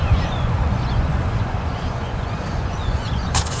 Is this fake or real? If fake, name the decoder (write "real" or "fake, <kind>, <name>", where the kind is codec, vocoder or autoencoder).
fake, vocoder, Vocos